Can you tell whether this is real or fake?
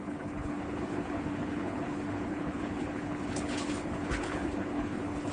fake